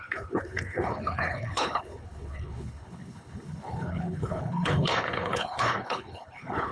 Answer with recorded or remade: remade